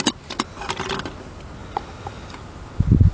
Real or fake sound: real